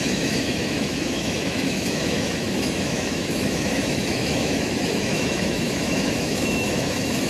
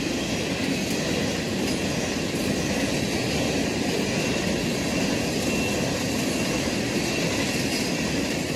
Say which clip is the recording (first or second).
second